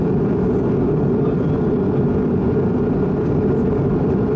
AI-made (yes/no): no